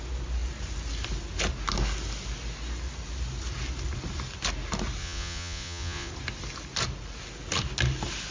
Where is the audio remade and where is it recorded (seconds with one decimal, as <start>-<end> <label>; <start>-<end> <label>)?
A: 0.0-5.0 recorded; 5.0-6.1 remade; 6.1-8.3 recorded